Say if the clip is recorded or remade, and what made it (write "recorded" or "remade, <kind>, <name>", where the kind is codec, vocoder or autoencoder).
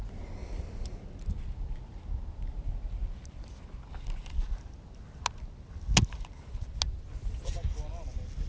recorded